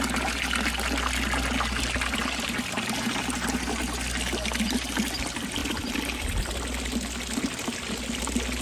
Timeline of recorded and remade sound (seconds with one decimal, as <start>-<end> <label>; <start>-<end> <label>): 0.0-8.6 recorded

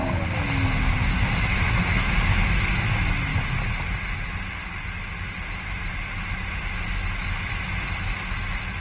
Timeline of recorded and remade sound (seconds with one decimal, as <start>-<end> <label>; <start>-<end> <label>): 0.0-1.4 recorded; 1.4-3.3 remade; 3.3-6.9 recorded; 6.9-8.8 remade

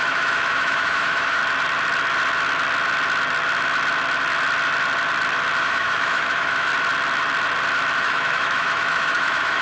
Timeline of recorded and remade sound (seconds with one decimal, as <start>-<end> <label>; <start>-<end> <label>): 0.0-1.4 remade; 1.4-5.6 recorded; 5.6-6.7 remade; 6.7-8.0 recorded; 8.0-9.6 remade